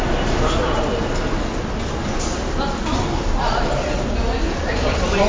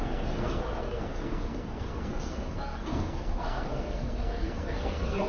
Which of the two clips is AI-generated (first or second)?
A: second